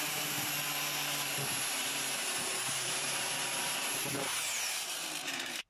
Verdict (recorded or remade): remade